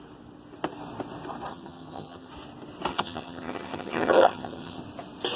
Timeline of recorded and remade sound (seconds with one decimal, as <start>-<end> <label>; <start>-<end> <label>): 0.0-1.5 recorded; 1.5-2.3 remade; 2.3-2.9 recorded; 2.9-4.8 remade; 4.8-5.4 recorded